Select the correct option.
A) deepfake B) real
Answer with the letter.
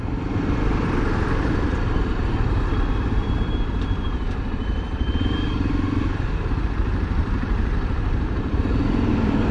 A